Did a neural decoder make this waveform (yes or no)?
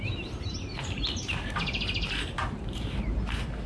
yes